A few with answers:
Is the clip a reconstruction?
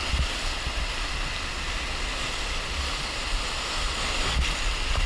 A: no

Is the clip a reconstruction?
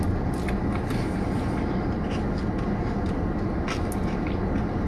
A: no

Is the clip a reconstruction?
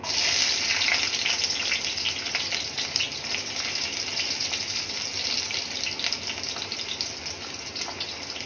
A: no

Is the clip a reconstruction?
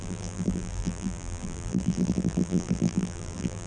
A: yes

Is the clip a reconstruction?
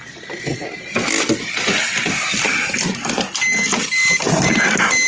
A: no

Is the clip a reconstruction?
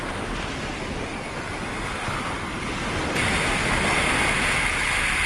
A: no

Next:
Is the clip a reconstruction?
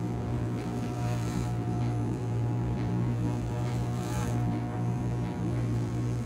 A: yes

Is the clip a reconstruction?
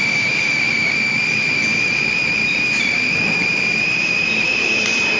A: yes